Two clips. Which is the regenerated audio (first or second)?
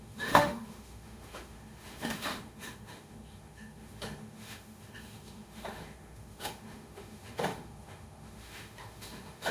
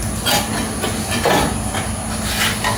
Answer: first